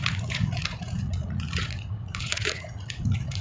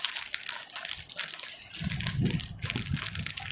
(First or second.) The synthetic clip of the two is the first